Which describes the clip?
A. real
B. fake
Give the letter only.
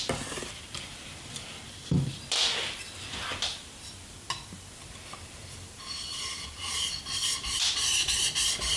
B